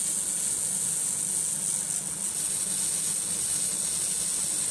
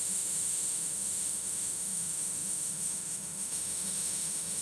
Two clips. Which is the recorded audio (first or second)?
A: first